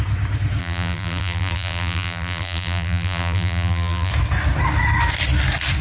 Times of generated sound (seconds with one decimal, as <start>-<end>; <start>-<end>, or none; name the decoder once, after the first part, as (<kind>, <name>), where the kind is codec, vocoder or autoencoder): 0.6-4.1 (vocoder, BigVGAN v2)